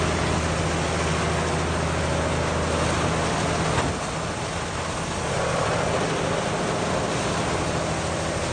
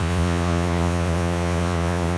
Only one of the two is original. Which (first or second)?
first